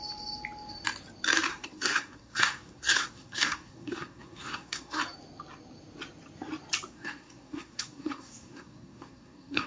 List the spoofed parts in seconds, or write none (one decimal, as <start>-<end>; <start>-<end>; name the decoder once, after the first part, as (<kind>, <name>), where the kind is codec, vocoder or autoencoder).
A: 1.5-5.0 (codec, SNAC); 6.9-9.7